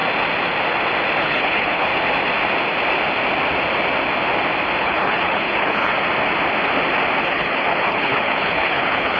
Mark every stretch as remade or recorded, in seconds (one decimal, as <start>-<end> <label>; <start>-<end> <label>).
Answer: 0.0-1.2 recorded; 1.2-1.9 remade; 1.9-4.8 recorded; 4.8-5.9 remade; 5.9-7.2 recorded; 7.2-9.2 remade